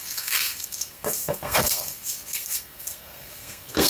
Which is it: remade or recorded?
remade